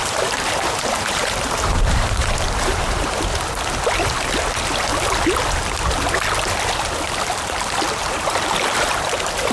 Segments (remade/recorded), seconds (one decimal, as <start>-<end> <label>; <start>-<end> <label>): 0.0-3.2 remade; 3.2-9.5 recorded